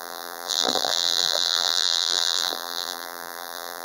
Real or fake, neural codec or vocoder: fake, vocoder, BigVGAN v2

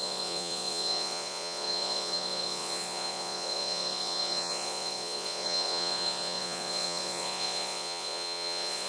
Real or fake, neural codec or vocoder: fake, vocoder, Vocos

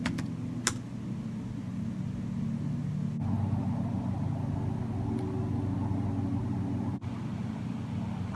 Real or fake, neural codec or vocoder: real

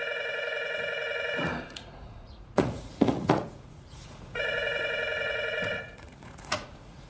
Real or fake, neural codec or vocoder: fake, vocoder, Vocos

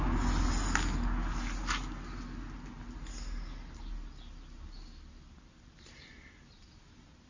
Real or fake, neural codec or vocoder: real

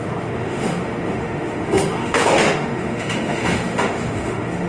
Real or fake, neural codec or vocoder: fake, autoencoder, DAC-VAE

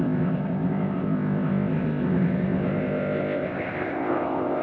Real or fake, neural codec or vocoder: fake, codec, ZipCodec